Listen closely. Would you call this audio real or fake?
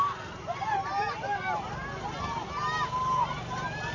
real